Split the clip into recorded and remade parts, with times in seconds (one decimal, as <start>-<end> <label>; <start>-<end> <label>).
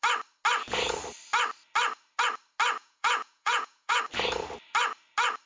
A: 0.0-2.8 recorded; 2.8-4.0 remade; 4.0-5.5 recorded